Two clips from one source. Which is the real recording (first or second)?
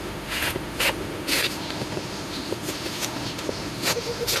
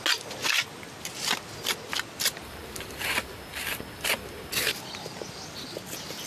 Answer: second